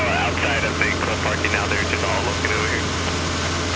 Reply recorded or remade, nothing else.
recorded